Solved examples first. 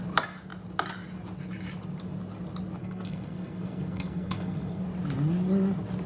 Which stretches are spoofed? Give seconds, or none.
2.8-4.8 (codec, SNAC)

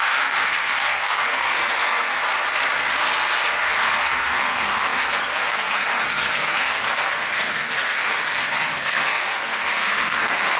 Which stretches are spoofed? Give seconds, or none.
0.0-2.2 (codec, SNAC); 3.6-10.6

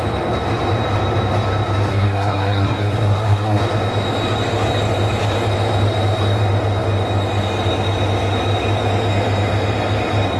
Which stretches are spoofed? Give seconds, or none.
1.9-3.6 (codec, SNAC)

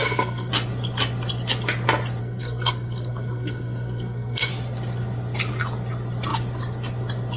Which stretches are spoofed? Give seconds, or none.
0.0-0.5 (codec, SNAC); 2.2-4.5